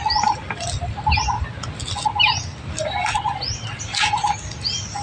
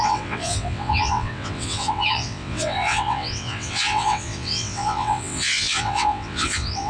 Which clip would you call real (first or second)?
first